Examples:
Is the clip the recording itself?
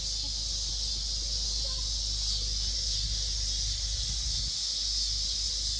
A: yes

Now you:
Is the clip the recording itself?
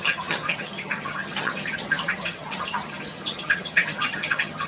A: no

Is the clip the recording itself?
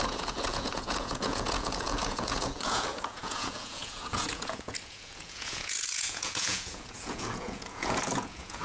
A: no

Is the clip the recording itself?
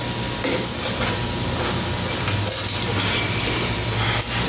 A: yes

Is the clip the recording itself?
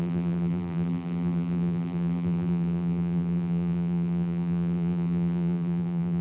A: no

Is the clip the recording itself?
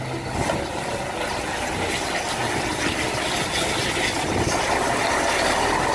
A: yes